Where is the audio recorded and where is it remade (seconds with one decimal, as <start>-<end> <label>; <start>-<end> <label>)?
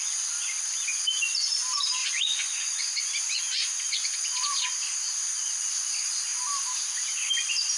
0.0-2.0 recorded; 2.0-4.8 remade; 4.8-7.8 recorded